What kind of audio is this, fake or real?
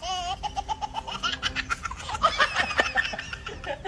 real